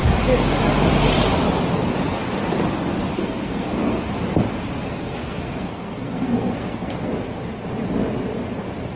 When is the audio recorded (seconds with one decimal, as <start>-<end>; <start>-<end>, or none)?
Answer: 0.0-3.2; 4.0-4.8; 7.1-9.0